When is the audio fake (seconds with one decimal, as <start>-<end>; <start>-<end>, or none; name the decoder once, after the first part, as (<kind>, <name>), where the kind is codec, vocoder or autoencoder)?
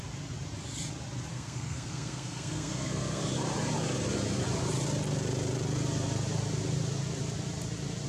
1.3-3.2 (codec, SNAC)